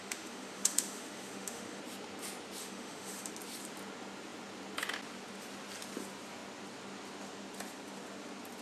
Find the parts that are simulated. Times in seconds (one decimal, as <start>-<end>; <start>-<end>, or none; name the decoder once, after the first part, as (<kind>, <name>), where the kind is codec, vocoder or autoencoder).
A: 0.0-1.8 (autoencoder, DAC-VAE); 2.6-3.3